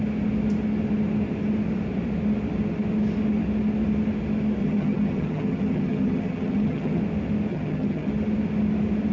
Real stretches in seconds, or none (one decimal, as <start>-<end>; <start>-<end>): 0.0-4.6; 7.0-7.5; 8.1-9.1